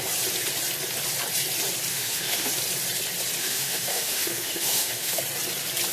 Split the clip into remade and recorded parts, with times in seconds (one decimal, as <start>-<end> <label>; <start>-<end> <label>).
0.0-1.9 recorded; 1.9-2.5 remade; 2.5-3.4 recorded; 3.4-5.2 remade; 5.2-5.9 recorded